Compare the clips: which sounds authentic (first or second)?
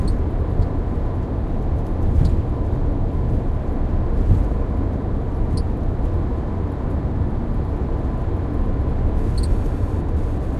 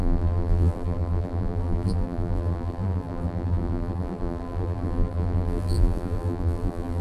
first